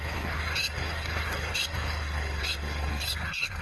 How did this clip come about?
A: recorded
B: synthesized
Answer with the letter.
B